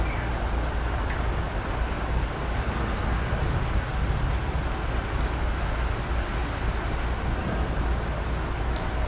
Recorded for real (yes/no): yes